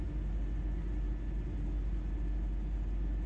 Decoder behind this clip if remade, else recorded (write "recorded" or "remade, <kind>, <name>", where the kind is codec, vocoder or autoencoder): recorded